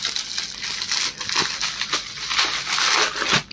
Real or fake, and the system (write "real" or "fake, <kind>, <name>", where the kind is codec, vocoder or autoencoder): real